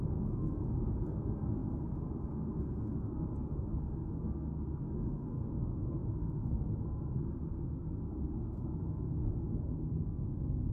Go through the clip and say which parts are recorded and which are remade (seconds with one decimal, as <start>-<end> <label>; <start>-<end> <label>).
0.0-10.7 remade